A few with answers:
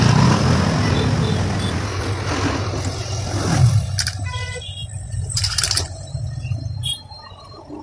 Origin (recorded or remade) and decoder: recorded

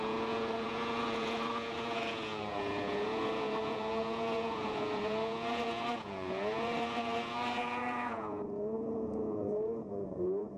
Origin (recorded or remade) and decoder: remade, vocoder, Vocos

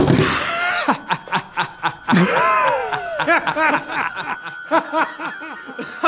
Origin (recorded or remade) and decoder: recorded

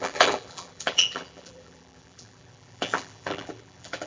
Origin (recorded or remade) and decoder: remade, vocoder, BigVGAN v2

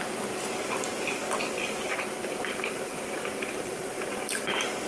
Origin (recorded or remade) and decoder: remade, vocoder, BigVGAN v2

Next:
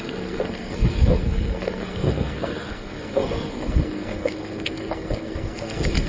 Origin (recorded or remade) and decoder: remade, codec, SNAC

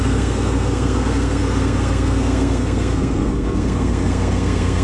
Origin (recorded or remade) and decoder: remade, codec, SNAC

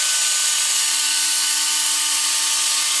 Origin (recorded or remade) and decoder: recorded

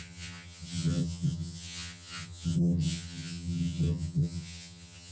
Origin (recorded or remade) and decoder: remade, vocoder, HiFi-GAN